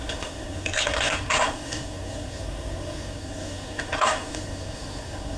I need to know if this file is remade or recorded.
remade